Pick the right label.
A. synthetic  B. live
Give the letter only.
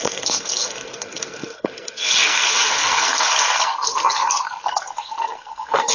A